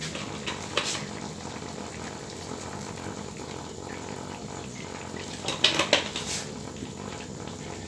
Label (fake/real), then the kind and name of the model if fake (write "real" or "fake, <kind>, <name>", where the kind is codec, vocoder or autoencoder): real